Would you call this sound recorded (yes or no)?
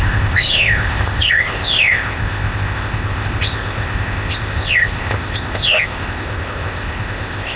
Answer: no